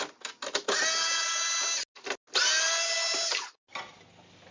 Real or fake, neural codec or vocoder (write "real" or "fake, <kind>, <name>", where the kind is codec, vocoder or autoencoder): real